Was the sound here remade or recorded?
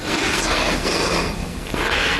remade